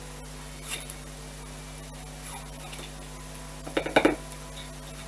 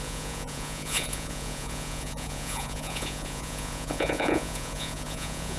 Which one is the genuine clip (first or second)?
first